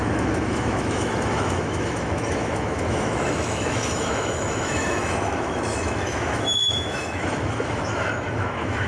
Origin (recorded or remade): remade